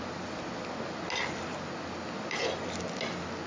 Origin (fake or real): real